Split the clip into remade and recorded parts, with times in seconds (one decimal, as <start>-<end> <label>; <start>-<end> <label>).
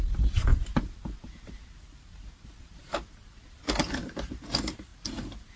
0.0-0.5 recorded; 0.5-3.9 remade; 3.9-4.9 recorded; 4.9-5.6 remade